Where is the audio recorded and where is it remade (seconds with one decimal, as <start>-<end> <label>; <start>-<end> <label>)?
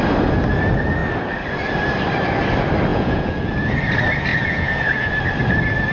0.0-2.9 recorded; 2.9-3.7 remade; 3.7-4.3 recorded; 4.3-5.1 remade; 5.1-5.9 recorded